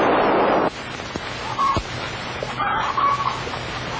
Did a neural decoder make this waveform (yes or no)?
no